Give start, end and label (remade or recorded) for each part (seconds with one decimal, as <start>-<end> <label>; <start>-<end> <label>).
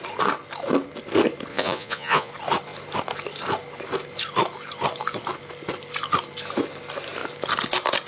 0.0-1.5 recorded; 1.5-2.3 remade; 2.3-8.1 recorded